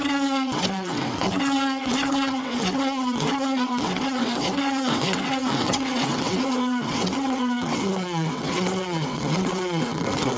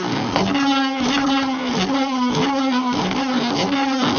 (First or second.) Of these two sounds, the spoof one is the first